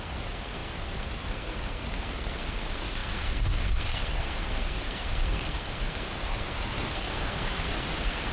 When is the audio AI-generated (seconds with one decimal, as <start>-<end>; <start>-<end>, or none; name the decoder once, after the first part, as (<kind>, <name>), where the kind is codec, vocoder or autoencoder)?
0.0-8.3 (codec, SNAC)